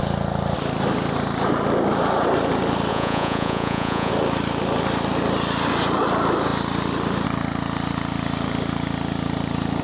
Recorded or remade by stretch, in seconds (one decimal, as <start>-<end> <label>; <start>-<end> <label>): 0.0-2.9 recorded; 2.9-4.1 remade; 4.1-9.8 recorded

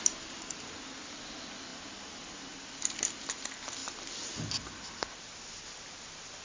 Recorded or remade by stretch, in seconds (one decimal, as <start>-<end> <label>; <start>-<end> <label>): 0.0-6.4 recorded